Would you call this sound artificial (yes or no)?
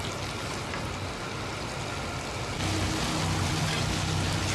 no